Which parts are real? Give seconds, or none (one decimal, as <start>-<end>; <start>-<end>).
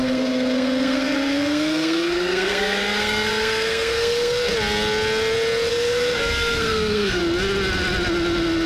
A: 4.5-5.7; 7.2-8.7